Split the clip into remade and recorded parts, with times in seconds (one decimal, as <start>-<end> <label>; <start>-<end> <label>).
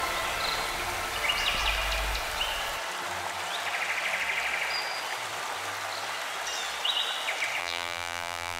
0.0-7.6 recorded; 7.6-8.6 remade